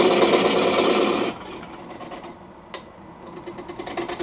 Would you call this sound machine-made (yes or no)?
no